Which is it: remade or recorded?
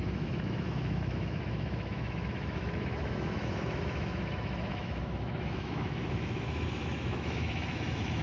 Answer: remade